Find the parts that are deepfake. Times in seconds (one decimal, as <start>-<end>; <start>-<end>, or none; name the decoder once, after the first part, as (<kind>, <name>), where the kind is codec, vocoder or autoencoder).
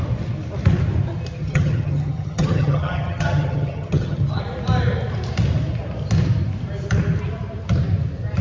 1.4-4.4 (vocoder, HiFi-GAN)